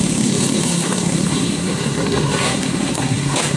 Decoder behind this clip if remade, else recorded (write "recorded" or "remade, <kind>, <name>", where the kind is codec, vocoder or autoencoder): remade, codec, SNAC